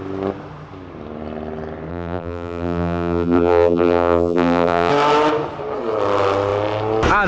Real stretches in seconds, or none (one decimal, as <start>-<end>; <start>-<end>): 0.0-1.9; 4.9-7.3